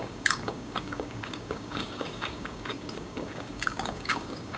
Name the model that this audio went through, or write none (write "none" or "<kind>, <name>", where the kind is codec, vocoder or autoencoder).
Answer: codec, DAC